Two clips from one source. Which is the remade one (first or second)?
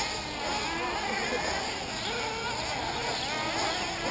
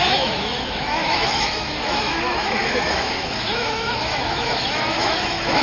second